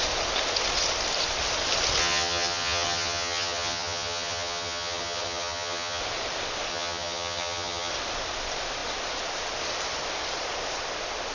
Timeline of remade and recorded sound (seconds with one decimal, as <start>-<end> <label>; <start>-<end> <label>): 0.0-2.0 recorded; 2.0-6.0 remade; 6.0-6.7 recorded; 6.7-7.9 remade; 7.9-11.3 recorded